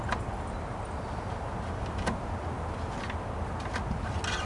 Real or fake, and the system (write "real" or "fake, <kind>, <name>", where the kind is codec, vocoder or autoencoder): real